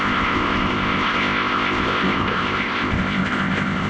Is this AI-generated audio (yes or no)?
yes